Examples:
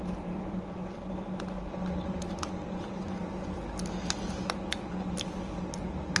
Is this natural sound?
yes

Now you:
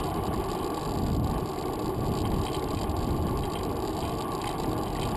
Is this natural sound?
yes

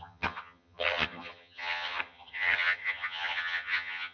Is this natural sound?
no